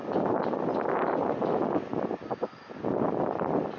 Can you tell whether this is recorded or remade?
recorded